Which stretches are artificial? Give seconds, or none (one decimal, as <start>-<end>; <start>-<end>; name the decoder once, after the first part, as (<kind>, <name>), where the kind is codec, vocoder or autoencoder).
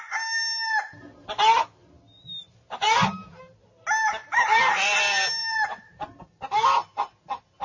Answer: 1.8-3.4 (vocoder, BigVGAN v2)